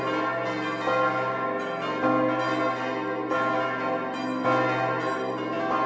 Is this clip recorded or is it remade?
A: recorded